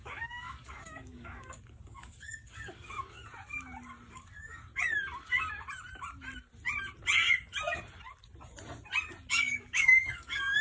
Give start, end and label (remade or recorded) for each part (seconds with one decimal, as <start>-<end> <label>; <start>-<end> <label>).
0.0-3.2 remade; 3.2-4.1 recorded; 4.1-4.7 remade; 4.7-9.3 recorded; 9.3-10.6 remade